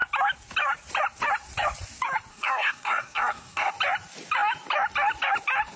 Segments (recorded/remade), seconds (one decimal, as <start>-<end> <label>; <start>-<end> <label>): 0.0-2.3 recorded; 2.3-3.7 remade; 3.7-5.8 recorded